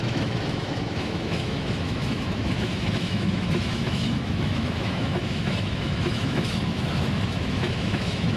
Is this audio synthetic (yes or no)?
yes